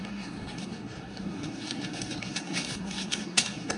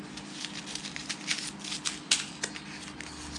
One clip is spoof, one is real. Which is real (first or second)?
second